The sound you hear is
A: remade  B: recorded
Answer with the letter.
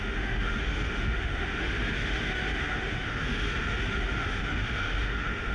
A